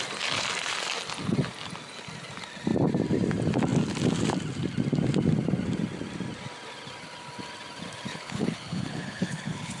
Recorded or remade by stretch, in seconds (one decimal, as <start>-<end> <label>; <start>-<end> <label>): 0.0-8.1 recorded; 8.1-9.8 remade